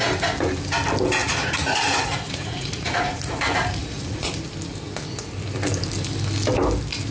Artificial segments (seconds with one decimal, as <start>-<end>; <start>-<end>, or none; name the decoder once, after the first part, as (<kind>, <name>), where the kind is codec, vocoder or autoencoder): 1.2-3.4 (vocoder, Vocos); 3.8-4.3